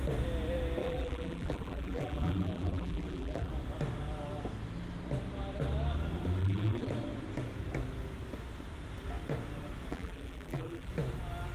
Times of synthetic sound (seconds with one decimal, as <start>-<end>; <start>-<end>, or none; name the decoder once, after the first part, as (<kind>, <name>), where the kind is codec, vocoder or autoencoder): 0.8-3.5 (vocoder, BigVGAN v2); 6.4-6.9; 9.9-10.9